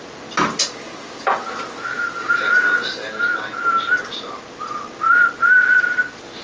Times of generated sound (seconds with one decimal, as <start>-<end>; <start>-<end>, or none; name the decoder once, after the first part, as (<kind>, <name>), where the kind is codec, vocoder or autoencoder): none